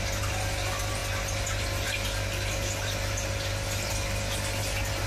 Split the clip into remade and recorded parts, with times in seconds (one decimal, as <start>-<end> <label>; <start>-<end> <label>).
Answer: 0.0-5.1 recorded